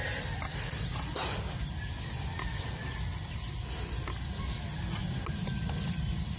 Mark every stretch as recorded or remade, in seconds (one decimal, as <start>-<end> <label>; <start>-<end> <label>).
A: 0.0-5.0 recorded; 5.0-5.9 remade; 5.9-6.4 recorded